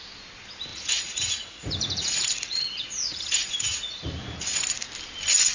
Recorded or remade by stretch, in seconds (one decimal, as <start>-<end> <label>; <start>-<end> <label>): 0.0-0.7 recorded; 0.7-4.0 remade; 4.0-5.5 recorded